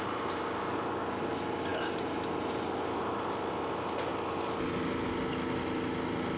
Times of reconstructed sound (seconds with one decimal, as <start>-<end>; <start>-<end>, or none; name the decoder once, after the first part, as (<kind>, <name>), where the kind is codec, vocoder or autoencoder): none